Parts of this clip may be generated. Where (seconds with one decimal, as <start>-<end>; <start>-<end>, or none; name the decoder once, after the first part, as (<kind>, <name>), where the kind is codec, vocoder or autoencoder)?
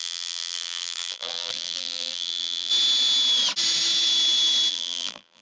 0.0-2.7 (vocoder, BigVGAN v2); 4.7-5.4